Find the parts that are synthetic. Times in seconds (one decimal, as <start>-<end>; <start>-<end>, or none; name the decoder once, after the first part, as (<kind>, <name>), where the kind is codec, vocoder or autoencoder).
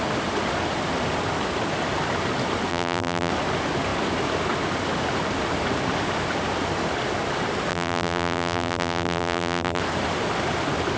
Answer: 2.7-3.3 (vocoder, BigVGAN v2); 7.7-9.8